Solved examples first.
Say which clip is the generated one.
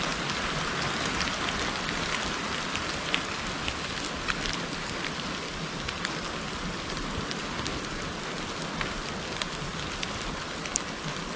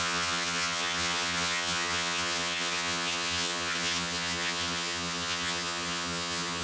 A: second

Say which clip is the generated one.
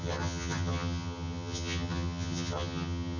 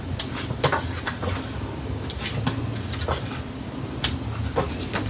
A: first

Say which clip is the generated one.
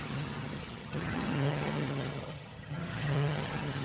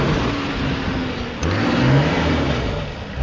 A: first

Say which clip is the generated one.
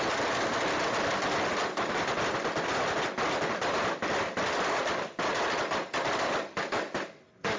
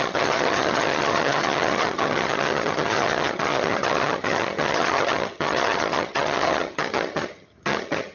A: second